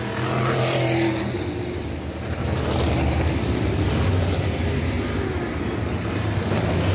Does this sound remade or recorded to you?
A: recorded